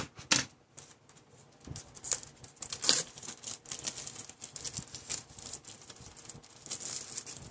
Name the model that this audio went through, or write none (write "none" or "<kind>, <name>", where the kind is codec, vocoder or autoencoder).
none